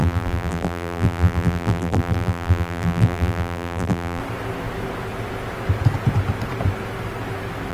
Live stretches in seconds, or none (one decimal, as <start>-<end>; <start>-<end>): 4.2-7.7